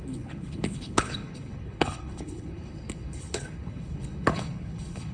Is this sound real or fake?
fake